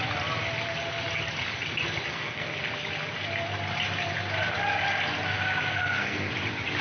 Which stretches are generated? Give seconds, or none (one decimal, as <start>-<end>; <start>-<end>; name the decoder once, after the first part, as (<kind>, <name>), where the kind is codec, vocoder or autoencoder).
2.1-2.6 (codec, SNAC); 5.7-6.3